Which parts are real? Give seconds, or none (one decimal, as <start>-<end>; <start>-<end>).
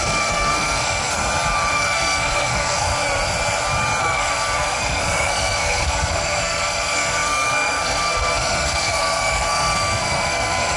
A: 1.2-1.7; 2.9-4.0